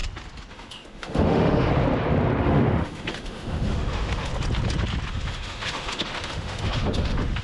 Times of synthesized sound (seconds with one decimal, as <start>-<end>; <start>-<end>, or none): 0.5-1.7; 2.4-4.3; 5.1-7.4